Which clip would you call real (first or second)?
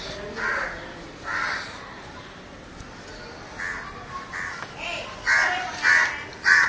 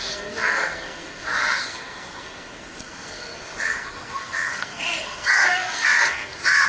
first